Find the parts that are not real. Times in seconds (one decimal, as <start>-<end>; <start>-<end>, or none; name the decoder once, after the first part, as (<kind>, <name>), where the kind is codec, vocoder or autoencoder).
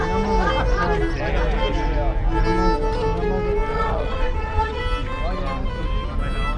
3.7-4.8 (vocoder, Vocos)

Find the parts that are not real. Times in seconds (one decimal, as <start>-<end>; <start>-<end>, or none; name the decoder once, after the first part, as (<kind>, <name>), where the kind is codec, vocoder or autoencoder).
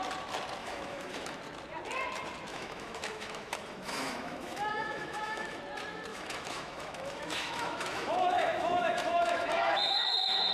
0.6-1.4 (autoencoder, DAC-VAE); 2.5-5.6; 6.1-10.5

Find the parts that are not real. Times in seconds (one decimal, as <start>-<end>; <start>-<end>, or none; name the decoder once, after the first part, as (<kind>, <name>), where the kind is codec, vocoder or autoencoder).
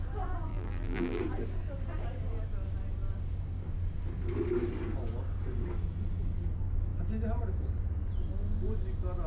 0.5-1.2 (vocoder, BigVGAN v2)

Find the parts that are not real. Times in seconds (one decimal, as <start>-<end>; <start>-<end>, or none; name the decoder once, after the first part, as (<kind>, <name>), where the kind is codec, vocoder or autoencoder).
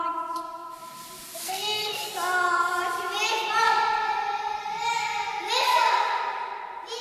1.4-2.1 (codec, SNAC)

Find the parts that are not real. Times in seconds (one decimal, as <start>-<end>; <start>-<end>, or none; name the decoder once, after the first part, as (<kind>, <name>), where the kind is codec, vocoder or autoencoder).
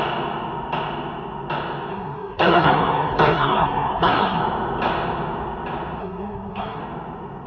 1.9-4.4 (codec, SNAC); 6.0-6.8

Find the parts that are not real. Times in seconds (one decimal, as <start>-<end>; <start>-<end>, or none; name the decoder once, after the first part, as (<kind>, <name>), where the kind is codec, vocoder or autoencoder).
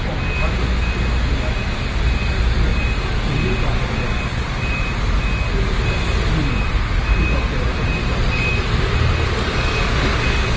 none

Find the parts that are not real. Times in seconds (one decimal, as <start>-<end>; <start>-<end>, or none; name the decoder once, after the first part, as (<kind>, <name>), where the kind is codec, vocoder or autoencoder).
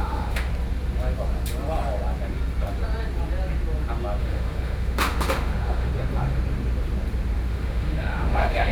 0.0-0.5 (autoencoder, DAC-VAE); 4.2-5.9; 7.5-8.7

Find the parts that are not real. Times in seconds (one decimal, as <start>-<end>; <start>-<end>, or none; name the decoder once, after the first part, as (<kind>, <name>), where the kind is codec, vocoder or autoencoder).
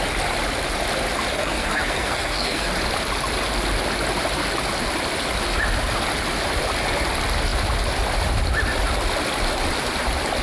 1.4-2.7 (codec, SNAC)